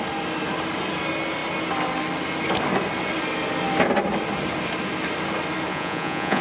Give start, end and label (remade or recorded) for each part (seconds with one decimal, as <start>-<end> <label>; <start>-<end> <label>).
0.0-5.7 recorded; 5.7-6.4 remade